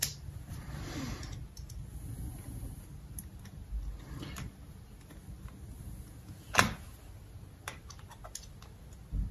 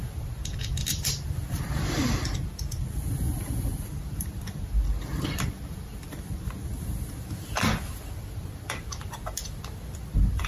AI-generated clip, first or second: second